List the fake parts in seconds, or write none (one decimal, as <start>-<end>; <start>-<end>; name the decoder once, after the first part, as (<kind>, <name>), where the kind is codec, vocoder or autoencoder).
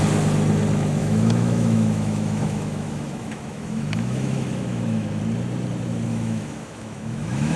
1.0-5.2 (autoencoder, DAC-VAE); 6.1-7.6